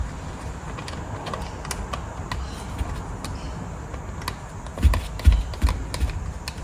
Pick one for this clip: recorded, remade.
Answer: recorded